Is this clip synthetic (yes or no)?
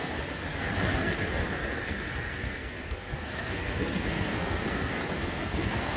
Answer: yes